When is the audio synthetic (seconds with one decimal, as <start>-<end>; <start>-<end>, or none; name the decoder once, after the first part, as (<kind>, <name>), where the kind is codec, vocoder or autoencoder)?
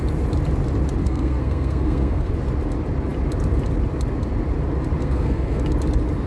1.0-2.3 (codec, SNAC); 5.0-5.6